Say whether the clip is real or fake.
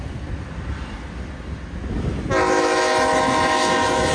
real